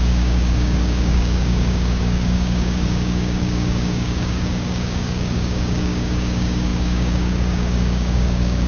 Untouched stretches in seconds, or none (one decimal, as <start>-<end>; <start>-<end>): none